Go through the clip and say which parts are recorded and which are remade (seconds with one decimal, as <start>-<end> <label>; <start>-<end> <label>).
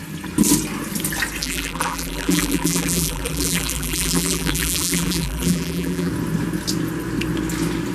0.0-1.4 recorded; 1.4-6.1 remade; 6.1-7.9 recorded